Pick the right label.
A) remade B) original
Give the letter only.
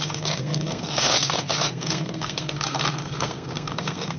A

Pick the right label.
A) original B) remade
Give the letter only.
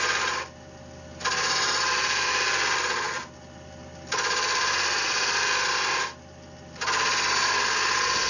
A